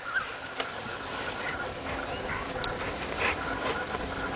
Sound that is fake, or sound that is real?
real